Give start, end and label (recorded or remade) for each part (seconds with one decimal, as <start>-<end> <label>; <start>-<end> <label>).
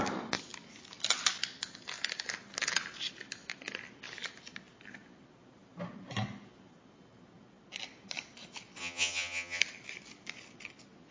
0.0-8.8 recorded; 8.8-9.6 remade; 9.6-11.1 recorded